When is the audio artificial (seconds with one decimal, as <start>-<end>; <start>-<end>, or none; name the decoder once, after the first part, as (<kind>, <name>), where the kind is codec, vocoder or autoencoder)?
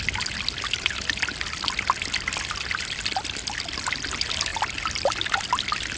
none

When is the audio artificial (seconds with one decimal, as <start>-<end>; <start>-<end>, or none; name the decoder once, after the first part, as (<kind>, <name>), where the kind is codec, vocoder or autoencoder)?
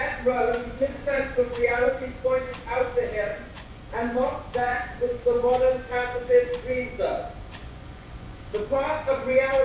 0.6-1.9 (vocoder, Vocos); 3.3-3.9; 4.7-5.5; 7.6-8.6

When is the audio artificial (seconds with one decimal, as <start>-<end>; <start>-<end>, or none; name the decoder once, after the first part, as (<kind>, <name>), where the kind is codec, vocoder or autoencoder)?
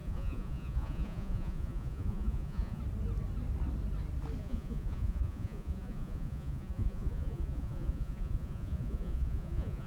0.0-2.8 (vocoder, Vocos); 4.4-9.9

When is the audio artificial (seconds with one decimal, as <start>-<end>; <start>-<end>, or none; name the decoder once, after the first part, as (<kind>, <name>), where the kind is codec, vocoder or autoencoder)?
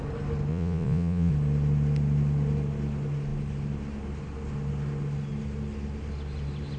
0.5-1.3 (vocoder, Vocos)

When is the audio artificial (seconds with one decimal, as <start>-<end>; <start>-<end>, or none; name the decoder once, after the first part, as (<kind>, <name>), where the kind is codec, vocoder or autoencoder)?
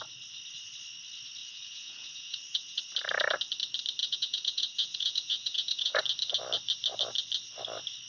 1.4-2.8 (vocoder, Vocos); 4.0-6.0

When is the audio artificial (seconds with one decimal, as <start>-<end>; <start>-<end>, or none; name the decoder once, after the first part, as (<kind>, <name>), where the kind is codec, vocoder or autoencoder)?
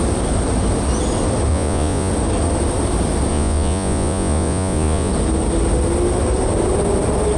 1.5-2.1 (vocoder, Vocos); 3.3-5.1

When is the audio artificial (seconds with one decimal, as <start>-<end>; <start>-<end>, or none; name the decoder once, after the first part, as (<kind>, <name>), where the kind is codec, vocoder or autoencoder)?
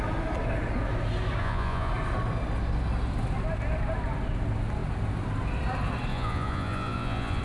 1.4-1.9 (vocoder, Vocos); 6.1-7.4